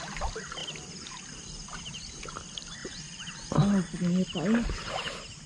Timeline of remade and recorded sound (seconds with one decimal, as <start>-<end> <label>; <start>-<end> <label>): 0.0-1.7 recorded; 1.7-2.2 remade; 2.2-5.5 recorded